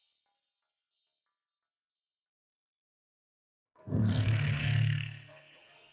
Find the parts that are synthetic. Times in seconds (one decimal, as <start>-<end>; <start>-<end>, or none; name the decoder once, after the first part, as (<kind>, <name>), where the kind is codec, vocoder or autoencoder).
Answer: 2.4-5.9 (codec, SNAC)